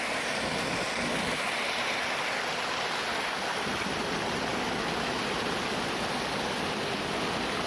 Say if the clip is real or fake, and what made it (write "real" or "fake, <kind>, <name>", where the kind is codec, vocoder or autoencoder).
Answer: real